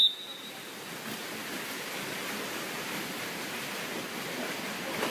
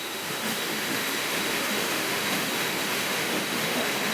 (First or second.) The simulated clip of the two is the second